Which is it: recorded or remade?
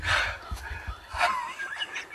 recorded